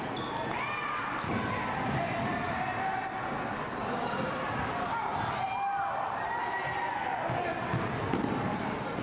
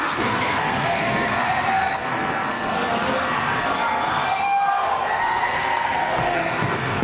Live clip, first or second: first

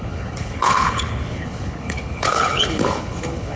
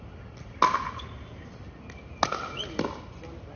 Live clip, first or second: second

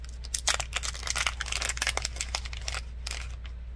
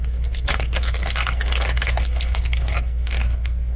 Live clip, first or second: first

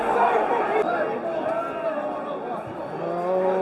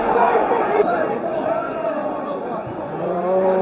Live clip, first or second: first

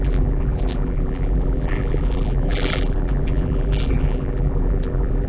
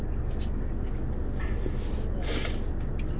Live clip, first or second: second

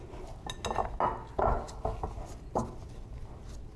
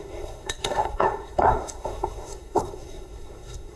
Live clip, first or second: first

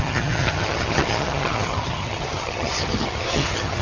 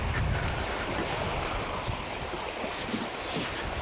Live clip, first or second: second